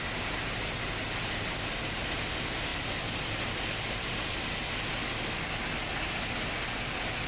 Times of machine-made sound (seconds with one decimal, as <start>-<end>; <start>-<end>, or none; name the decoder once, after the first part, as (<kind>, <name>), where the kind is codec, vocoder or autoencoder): none